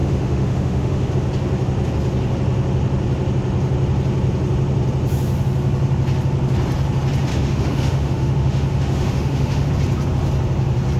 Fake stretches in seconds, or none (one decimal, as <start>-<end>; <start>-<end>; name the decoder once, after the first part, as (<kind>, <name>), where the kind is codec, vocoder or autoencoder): 0.0-1.1 (autoencoder, DAC-VAE); 7.3-9.7